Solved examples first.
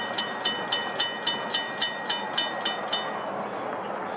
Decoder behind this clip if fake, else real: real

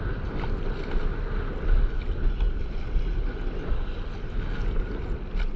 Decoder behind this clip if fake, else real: real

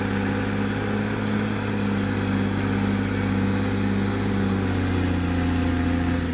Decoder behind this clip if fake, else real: real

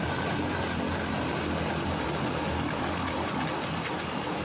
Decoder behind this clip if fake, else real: real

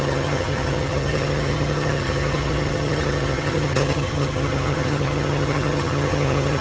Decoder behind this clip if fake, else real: fake, vocoder, HiFi-GAN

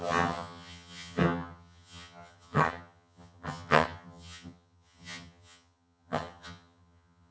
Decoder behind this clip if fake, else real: fake, vocoder, HiFi-GAN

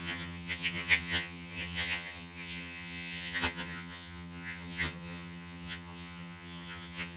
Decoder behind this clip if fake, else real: fake, vocoder, HiFi-GAN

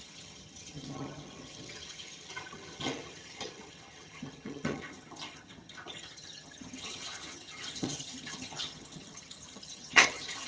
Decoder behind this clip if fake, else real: fake, vocoder, HiFi-GAN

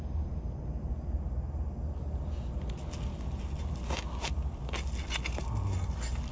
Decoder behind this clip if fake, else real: real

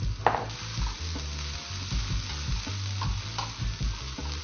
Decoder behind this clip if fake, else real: real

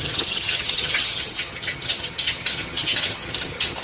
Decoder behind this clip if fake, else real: fake, vocoder, HiFi-GAN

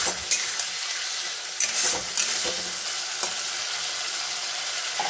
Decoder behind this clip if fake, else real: real